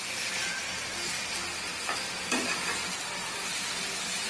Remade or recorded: recorded